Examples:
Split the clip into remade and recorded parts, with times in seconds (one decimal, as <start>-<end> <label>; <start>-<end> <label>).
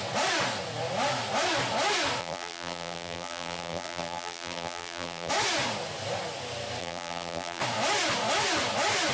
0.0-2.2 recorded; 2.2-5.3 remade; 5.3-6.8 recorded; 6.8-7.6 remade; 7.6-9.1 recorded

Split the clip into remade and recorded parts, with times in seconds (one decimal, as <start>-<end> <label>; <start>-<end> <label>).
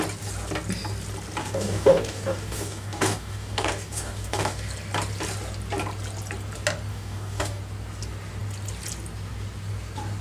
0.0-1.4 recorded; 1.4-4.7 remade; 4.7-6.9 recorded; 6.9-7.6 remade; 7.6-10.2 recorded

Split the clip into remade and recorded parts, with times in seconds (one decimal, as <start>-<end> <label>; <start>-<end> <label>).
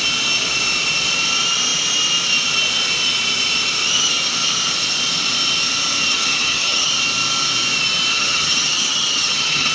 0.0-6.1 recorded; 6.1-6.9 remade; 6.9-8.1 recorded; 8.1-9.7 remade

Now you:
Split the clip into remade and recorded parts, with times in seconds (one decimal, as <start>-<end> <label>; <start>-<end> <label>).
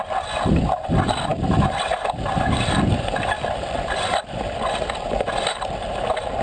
0.0-6.4 recorded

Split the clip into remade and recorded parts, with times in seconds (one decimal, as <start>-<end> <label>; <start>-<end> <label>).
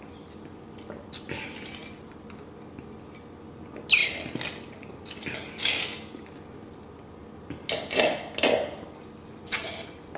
0.0-10.2 recorded